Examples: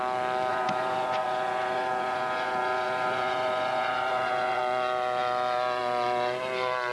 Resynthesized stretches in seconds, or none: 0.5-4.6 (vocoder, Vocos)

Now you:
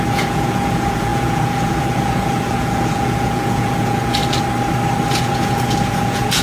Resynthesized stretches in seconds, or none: 0.0-4.2 (vocoder, Vocos); 5.2-6.4

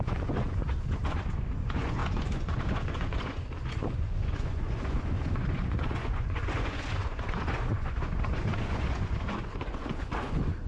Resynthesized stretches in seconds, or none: 0.0-10.7 (vocoder, Vocos)

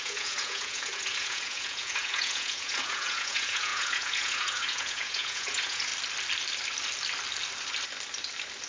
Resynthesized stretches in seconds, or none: 0.0-5.9 (vocoder, Vocos)

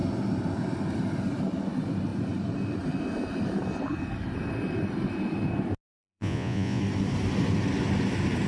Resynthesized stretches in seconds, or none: 6.0-6.8 (vocoder, Vocos)

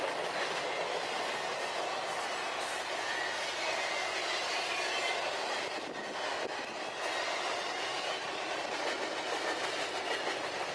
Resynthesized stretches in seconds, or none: none